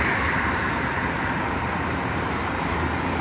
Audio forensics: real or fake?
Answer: fake